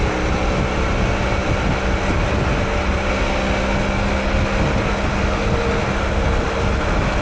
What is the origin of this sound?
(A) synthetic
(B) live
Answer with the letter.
B